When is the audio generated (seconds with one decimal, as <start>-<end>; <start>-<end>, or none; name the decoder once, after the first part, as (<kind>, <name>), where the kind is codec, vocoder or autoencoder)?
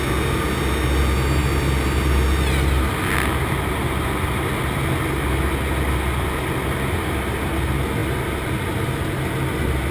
none